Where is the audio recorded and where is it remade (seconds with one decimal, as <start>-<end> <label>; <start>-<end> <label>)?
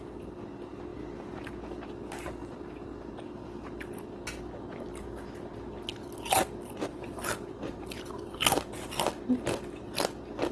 0.0-6.9 recorded; 6.9-8.4 remade; 8.4-10.5 recorded